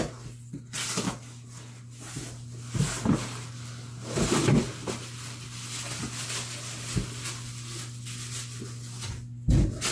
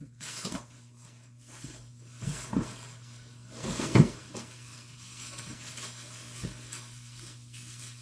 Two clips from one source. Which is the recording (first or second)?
first